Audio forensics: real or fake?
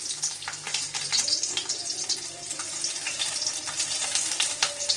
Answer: real